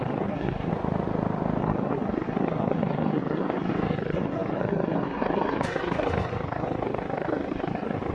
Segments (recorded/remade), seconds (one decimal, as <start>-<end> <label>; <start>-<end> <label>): 0.0-0.7 remade; 0.7-1.6 recorded; 1.6-8.1 remade